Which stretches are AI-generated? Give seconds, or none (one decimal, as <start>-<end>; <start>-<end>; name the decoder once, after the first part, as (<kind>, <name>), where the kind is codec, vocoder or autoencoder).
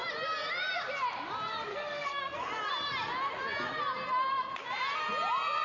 1.7-2.5 (codec, SNAC)